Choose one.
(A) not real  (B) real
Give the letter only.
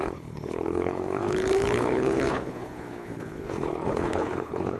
A